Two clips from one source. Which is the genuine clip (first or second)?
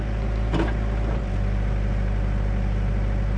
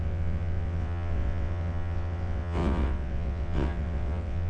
first